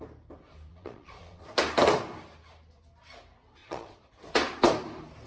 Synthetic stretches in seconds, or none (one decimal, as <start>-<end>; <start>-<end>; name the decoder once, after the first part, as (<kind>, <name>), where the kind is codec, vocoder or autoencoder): 0.7-1.4 (vocoder, Vocos); 3.6-4.1